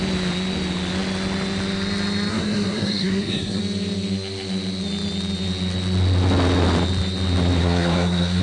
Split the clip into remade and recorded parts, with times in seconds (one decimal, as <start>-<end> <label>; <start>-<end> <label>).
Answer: 0.0-2.3 recorded; 2.3-3.6 remade; 3.6-7.6 recorded; 7.6-8.4 remade